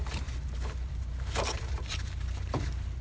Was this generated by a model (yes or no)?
no